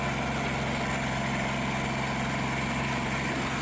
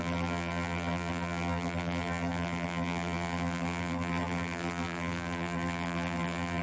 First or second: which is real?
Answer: first